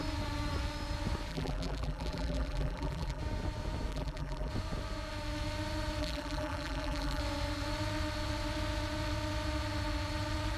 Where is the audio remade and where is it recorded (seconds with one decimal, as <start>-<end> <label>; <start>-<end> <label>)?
0.0-1.3 recorded; 1.3-3.2 remade; 3.2-3.9 recorded; 3.9-4.5 remade; 4.5-6.0 recorded; 6.0-7.2 remade; 7.2-10.6 recorded